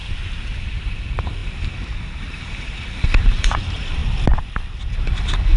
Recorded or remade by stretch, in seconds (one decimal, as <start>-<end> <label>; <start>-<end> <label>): 0.0-0.6 recorded; 0.6-4.0 remade; 4.0-4.9 recorded; 4.9-5.6 remade